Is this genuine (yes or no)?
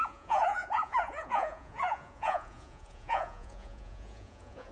no